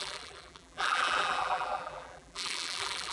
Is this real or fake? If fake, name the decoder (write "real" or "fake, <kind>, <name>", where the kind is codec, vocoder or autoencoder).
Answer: fake, vocoder, BigVGAN v2